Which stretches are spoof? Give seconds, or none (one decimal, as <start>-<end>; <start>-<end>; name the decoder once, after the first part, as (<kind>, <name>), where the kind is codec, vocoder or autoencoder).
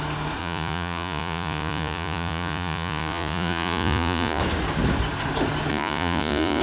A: 0.4-4.4 (vocoder, Vocos); 5.7-6.6